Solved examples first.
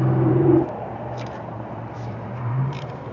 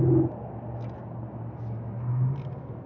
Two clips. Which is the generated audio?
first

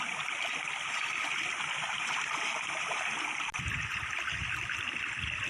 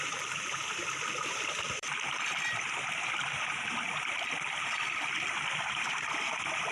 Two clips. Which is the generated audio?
second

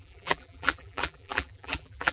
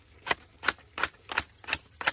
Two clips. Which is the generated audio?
first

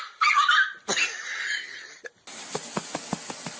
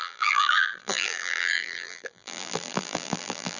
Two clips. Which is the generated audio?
second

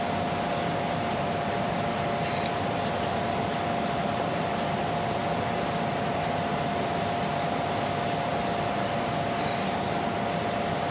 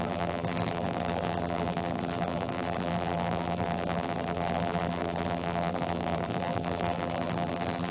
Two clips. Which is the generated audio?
second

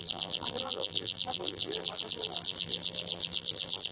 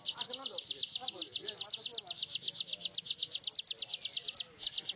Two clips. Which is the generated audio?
first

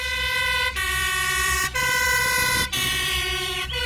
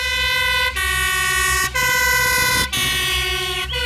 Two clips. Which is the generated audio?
first